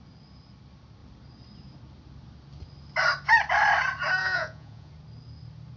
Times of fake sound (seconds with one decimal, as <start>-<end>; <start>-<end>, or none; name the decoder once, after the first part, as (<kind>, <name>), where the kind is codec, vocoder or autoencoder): 4.2-4.9 (vocoder, Vocos)